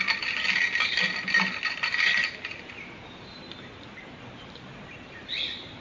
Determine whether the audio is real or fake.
real